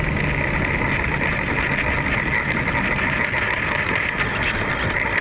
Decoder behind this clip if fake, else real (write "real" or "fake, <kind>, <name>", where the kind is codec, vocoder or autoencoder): real